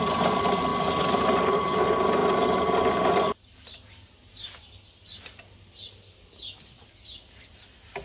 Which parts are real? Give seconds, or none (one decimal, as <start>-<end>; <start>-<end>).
0.0-8.0